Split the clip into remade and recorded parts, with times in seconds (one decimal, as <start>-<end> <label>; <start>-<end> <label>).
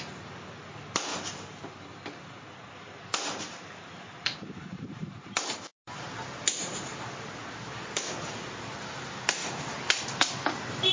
0.0-1.1 recorded; 1.1-6.0 remade; 6.0-6.6 recorded; 6.6-7.1 remade; 7.1-10.9 recorded